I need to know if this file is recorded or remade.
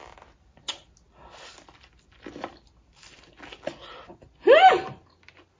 recorded